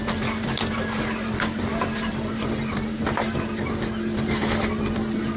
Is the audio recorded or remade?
recorded